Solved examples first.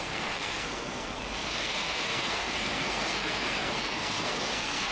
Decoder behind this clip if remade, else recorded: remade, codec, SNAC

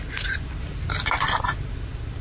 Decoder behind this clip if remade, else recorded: recorded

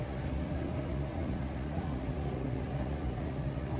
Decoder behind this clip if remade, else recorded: remade, vocoder, Vocos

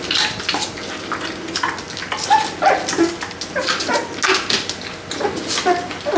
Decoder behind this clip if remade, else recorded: recorded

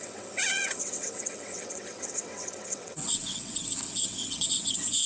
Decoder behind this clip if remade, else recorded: remade, vocoder, WaveNeXt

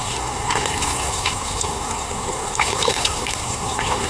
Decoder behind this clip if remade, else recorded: remade, codec, SNAC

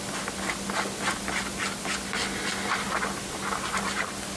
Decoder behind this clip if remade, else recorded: recorded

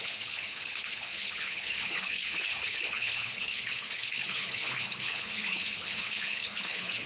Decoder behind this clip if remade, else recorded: remade, codec, HILCodec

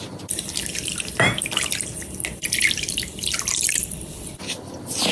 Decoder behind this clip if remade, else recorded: remade, vocoder, BigVGAN v2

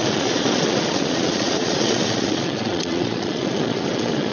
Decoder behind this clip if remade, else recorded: remade, vocoder, Vocos